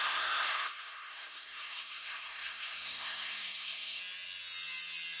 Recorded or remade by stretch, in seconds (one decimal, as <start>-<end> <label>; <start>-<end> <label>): 0.0-4.0 remade; 4.0-5.2 recorded